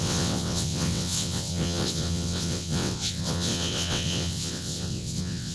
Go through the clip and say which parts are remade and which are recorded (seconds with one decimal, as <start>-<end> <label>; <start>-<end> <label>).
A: 0.0-5.5 remade